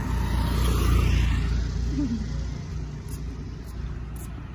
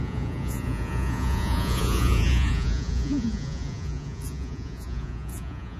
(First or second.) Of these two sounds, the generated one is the second